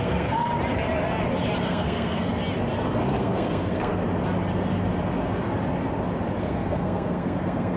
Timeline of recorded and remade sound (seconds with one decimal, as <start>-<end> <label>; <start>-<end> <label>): 0.0-0.5 remade; 0.5-1.6 recorded; 1.6-2.3 remade; 2.3-3.2 recorded; 3.2-4.0 remade; 4.0-6.4 recorded; 6.4-7.8 remade